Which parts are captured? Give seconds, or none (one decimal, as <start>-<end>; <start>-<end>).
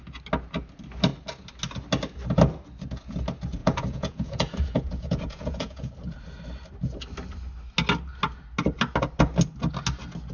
0.0-3.6; 5.9-10.3